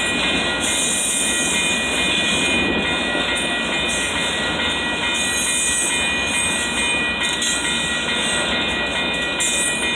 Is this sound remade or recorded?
recorded